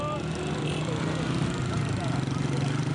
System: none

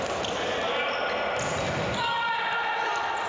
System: none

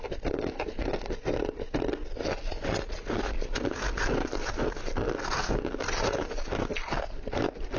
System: none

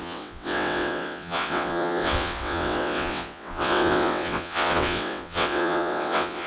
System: vocoder, WaveNeXt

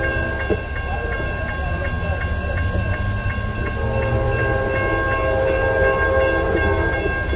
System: none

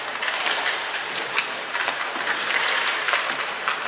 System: vocoder, BigVGAN v2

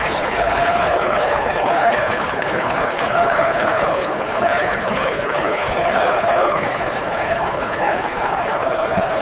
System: codec, HILCodec